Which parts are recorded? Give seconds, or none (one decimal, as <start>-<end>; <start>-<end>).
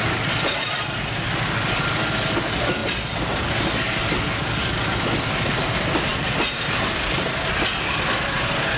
0.0-8.8